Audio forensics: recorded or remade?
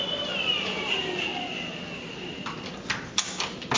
recorded